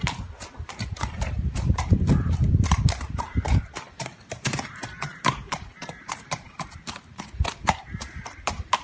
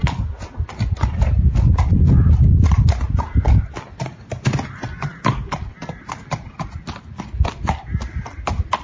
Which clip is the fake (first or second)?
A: first